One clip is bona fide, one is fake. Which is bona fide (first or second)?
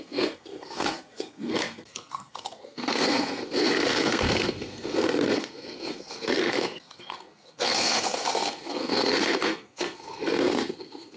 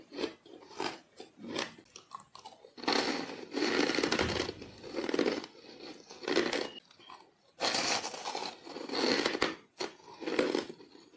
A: second